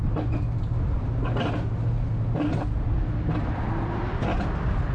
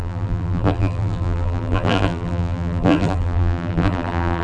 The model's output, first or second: second